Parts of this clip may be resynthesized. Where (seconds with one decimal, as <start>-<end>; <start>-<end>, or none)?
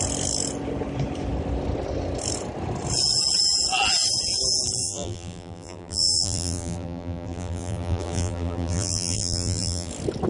4.8-9.9